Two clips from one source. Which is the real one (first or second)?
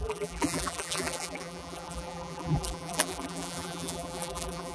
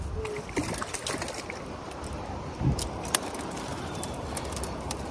second